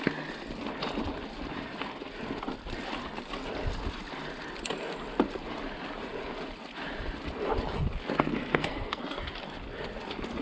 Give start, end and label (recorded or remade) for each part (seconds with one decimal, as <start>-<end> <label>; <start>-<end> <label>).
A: 0.0-8.3 recorded; 8.3-9.0 remade; 9.0-10.4 recorded